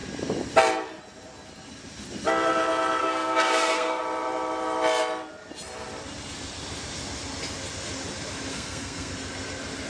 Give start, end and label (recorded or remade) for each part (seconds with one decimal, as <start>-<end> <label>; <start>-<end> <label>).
0.0-3.0 recorded; 3.0-4.0 remade; 4.0-8.5 recorded; 8.5-9.1 remade; 9.1-9.9 recorded